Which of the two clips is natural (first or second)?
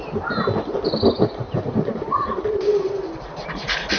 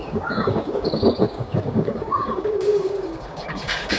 first